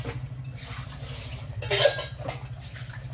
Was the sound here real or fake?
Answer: real